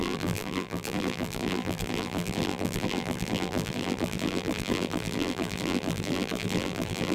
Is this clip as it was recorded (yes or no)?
no